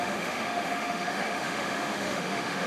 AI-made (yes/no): yes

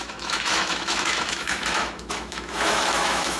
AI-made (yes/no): yes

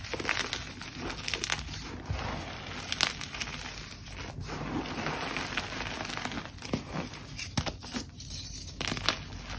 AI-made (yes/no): no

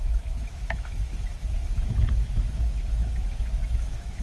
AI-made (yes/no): yes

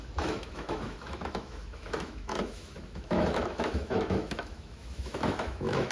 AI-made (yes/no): yes